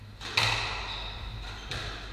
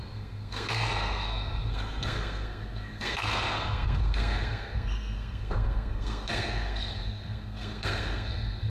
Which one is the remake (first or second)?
second